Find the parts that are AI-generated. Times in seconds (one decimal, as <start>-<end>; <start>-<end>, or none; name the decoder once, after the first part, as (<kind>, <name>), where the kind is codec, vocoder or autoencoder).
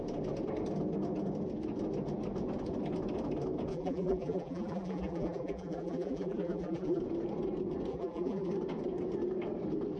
3.7-7.0 (vocoder, BigVGAN v2); 7.9-8.5